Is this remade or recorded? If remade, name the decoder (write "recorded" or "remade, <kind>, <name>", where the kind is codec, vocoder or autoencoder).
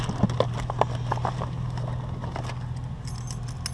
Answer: recorded